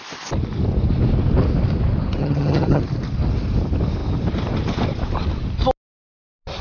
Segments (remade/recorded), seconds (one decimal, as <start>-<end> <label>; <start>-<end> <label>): 0.0-2.2 recorded; 2.2-2.8 remade; 2.8-6.6 recorded